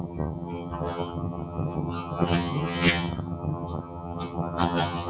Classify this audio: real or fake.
fake